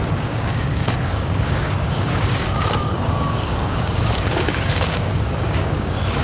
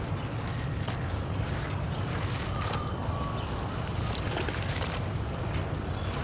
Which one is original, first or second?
second